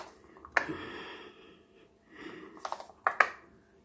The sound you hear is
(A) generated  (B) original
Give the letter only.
B